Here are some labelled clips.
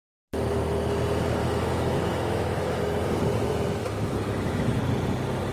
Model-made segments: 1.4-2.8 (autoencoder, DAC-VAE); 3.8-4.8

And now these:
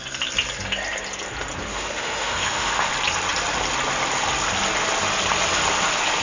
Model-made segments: 1.7-2.9 (autoencoder, DAC-VAE)

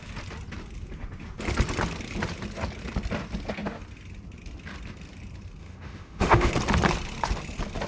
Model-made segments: 5.6-6.5 (autoencoder, DAC-VAE)